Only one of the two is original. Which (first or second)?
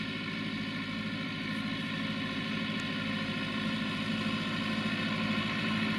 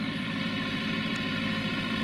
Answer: first